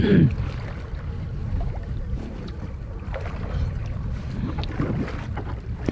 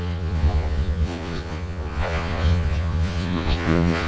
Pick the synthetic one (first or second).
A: second